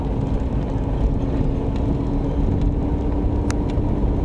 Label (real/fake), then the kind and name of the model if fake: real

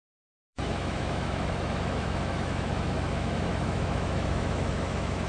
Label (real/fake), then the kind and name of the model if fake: fake, autoencoder, DAC-VAE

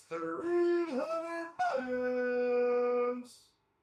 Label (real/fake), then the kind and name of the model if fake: fake, autoencoder, DAC-VAE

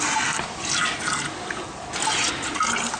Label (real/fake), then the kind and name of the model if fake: real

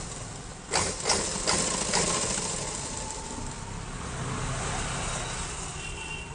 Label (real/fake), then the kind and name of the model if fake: real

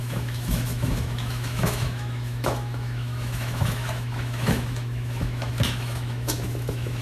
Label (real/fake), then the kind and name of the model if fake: fake, autoencoder, DAC-VAE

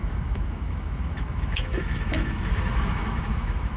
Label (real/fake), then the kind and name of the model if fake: fake, autoencoder, DAC-VAE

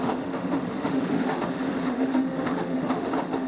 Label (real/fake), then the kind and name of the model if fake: fake, autoencoder, DAC-VAE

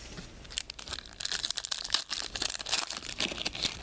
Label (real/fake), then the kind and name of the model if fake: real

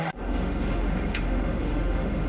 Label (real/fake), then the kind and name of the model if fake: fake, autoencoder, DAC-VAE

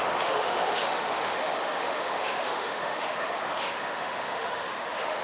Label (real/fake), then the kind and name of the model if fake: fake, autoencoder, DAC-VAE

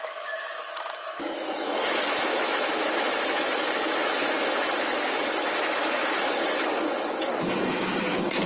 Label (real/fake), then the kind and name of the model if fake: fake, autoencoder, DAC-VAE